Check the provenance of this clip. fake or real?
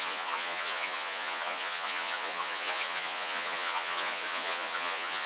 fake